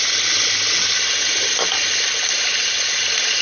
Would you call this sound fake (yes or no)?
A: no